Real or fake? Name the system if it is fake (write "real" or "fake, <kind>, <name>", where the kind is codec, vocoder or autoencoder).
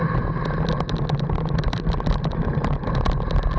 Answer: real